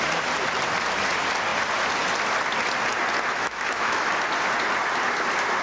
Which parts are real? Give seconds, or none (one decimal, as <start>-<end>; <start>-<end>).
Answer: 0.0-3.3; 4.1-5.6